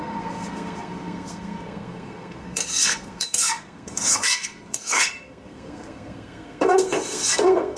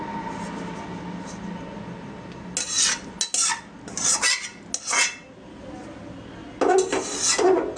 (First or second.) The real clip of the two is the second